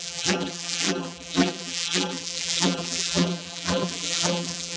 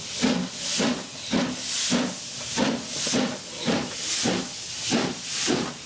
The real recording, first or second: second